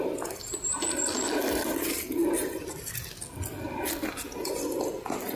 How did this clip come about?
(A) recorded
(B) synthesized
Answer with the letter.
A